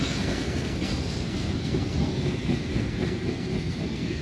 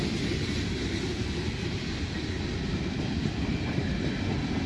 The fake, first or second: first